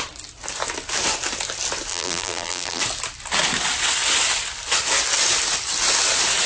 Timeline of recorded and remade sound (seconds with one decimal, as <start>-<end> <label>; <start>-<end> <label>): 0.0-1.9 recorded; 1.9-2.8 remade; 2.8-6.5 recorded